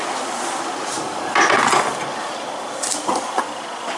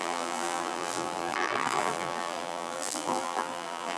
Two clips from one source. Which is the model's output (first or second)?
second